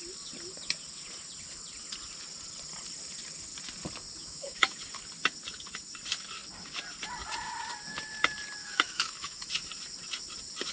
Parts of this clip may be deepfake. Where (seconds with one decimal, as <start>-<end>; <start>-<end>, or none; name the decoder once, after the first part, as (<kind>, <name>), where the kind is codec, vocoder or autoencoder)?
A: 4.2-4.8 (autoencoder, DAC-VAE); 8.6-9.5